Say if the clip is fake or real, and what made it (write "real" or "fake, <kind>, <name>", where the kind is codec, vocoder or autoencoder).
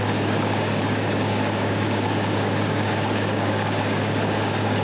fake, codec, DAC